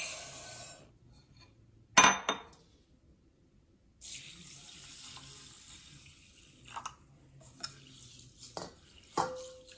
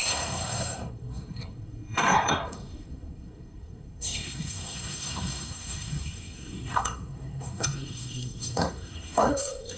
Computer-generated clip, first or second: second